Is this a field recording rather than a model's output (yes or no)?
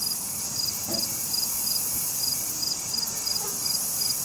yes